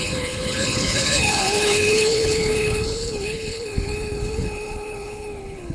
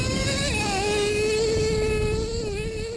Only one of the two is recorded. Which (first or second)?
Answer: second